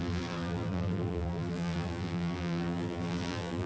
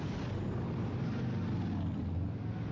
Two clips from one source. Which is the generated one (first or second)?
first